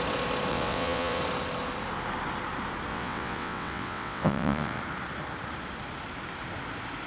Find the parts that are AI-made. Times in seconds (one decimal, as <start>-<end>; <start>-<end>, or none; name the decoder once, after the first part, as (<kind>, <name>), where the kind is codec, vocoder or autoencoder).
0.5-1.2 (vocoder, WaveNeXt); 2.9-4.8